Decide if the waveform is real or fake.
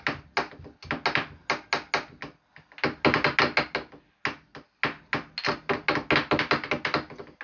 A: real